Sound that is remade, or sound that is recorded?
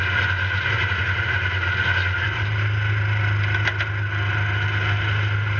recorded